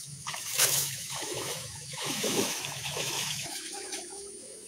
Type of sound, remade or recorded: remade